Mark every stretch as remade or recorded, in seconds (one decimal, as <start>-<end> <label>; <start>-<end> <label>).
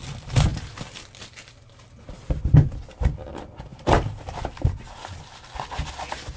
0.0-0.5 remade; 0.5-2.7 recorded; 2.7-6.4 remade